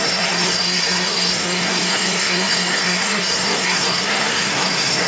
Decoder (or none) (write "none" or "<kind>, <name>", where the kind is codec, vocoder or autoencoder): codec, SNAC